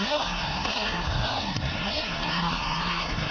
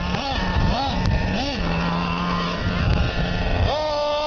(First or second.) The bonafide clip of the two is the second